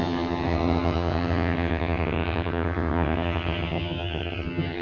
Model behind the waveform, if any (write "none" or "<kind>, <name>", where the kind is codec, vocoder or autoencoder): vocoder, HiFi-GAN